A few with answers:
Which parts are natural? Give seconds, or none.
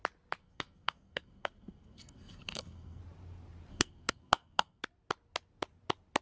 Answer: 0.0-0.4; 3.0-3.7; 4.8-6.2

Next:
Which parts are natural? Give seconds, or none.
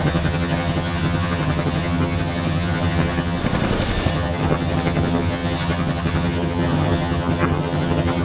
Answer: 3.4-4.1